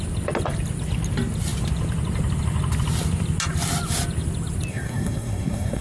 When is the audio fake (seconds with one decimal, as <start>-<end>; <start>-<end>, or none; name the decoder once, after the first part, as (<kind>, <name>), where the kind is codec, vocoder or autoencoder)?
4.7-5.8 (codec, SNAC)